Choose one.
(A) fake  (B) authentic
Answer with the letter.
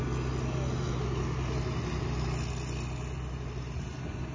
B